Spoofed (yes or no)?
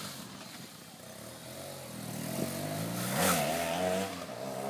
no